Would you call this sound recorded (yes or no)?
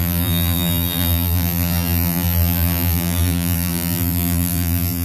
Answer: no